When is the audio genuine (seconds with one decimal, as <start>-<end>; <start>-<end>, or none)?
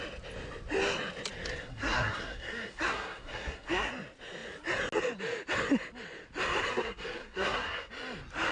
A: 0.0-1.5; 3.9-6.7; 7.9-8.5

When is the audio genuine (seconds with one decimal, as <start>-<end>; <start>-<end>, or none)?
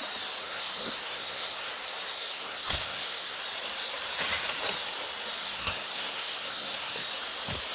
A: 0.0-0.4; 1.7-2.1; 3.4-5.4; 7.1-7.7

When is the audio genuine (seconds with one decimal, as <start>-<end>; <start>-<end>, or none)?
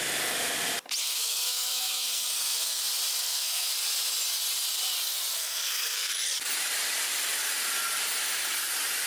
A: 0.0-1.0; 2.8-3.2; 3.7-5.3; 6.1-9.1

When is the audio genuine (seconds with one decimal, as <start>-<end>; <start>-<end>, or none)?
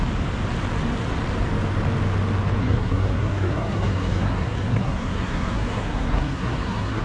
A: 0.0-2.6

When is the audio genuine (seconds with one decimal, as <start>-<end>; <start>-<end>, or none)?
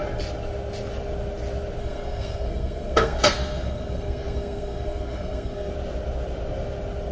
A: 0.0-1.8; 5.7-7.1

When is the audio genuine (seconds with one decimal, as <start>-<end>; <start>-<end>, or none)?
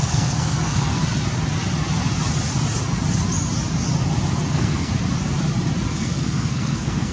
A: 1.0-4.5; 4.9-5.9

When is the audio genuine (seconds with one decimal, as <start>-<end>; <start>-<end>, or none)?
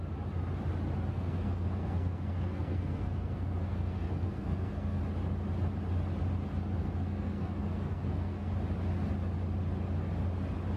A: 0.0-1.1; 5.0-6.8; 8.5-10.8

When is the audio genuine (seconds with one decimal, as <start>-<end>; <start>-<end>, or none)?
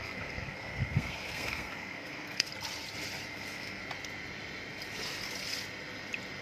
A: 2.5-3.3; 3.8-6.4